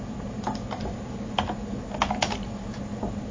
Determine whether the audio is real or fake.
real